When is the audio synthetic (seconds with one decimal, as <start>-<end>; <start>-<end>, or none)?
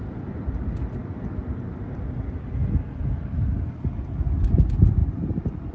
none